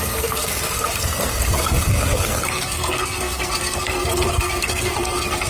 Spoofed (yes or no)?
yes